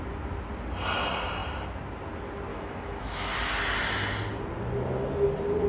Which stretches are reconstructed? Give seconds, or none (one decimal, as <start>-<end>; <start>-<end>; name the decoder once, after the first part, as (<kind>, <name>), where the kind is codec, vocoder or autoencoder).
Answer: 2.5-3.3 (autoencoder, DAC-VAE)